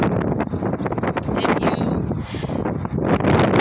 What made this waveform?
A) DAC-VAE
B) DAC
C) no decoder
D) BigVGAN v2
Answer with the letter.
C